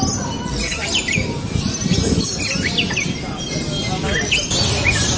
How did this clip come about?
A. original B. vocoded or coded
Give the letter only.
A